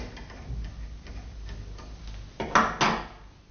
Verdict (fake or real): real